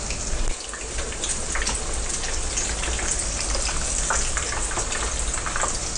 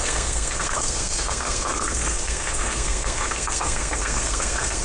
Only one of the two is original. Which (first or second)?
first